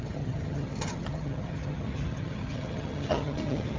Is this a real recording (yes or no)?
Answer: no